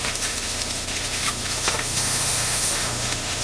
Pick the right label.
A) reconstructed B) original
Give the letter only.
A